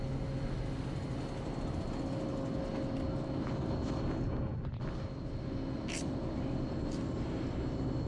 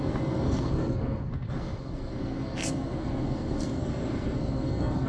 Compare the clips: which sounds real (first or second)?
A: first